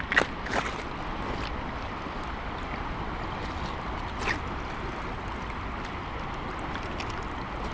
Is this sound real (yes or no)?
yes